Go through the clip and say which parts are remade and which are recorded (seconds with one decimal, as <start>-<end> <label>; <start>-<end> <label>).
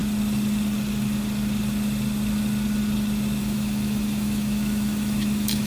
0.0-3.4 recorded; 3.4-5.7 remade